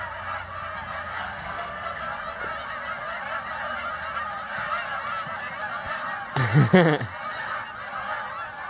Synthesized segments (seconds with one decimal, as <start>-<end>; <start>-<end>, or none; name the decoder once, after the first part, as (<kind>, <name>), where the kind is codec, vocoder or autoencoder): 1.1-2.0 (codec, SNAC)